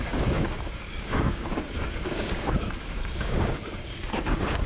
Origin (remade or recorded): remade